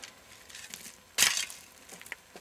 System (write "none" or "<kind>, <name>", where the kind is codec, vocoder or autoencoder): none